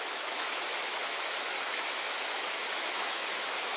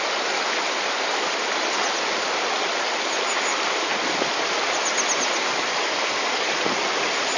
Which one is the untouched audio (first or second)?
second